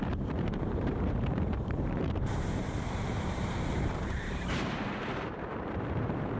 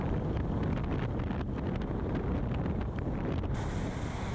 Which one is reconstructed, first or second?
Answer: first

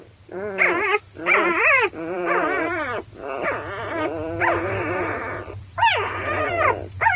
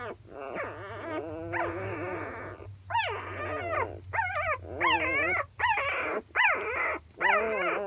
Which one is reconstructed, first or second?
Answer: first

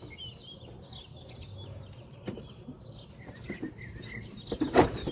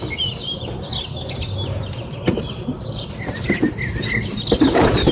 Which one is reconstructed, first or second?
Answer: second